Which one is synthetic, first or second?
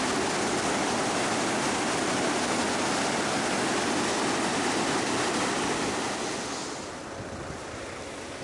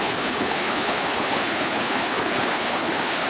second